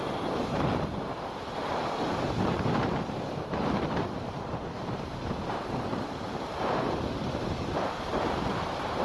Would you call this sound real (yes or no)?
no